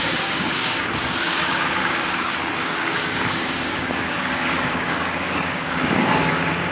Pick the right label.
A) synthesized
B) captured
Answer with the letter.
A